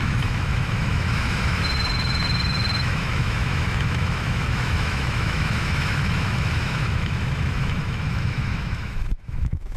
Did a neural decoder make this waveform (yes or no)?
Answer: yes